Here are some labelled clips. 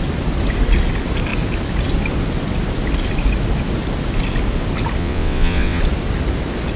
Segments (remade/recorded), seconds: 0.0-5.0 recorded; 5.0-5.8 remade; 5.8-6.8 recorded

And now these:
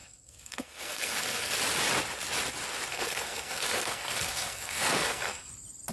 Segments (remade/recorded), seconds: 0.0-1.5 remade; 1.5-2.9 recorded; 2.9-5.5 remade; 5.5-5.9 recorded

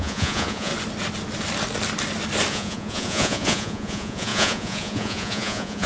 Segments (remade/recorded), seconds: 0.0-0.7 remade; 0.7-2.5 recorded; 2.5-5.9 remade

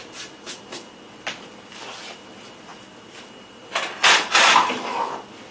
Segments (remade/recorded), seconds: 0.0-5.5 recorded

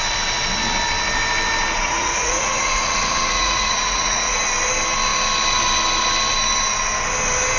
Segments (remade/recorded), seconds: 0.0-1.8 recorded; 1.8-4.4 remade; 4.4-7.6 recorded

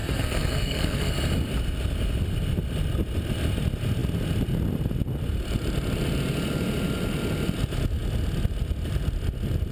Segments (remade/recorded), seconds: 0.0-1.1 remade; 1.1-9.7 recorded

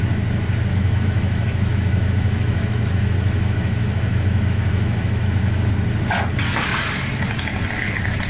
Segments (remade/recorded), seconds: 0.0-0.7 recorded; 0.7-5.7 remade; 5.7-8.3 recorded